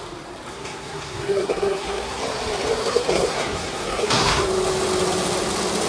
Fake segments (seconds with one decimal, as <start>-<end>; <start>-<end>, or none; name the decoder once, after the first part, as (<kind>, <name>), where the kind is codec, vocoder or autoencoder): 0.5-2.2 (codec, SNAC); 2.8-4.4